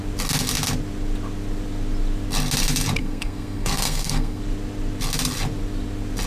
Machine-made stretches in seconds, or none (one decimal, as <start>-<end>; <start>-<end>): 3.0-4.4